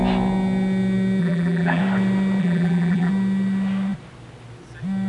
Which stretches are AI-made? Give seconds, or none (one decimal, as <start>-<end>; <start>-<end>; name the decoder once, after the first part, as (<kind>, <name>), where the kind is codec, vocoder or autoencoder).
1.2-1.8 (vocoder, BigVGAN v2); 2.4-3.1